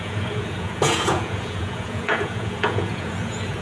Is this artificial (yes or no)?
yes